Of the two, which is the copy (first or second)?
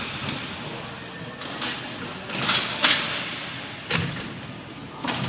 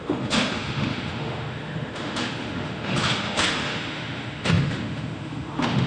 second